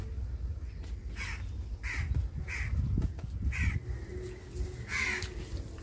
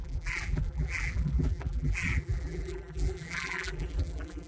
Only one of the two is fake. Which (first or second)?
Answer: second